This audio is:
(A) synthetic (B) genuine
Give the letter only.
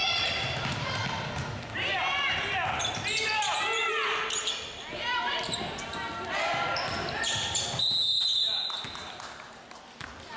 B